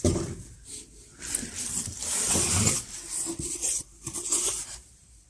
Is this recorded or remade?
recorded